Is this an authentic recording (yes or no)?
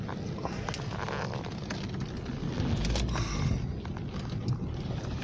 yes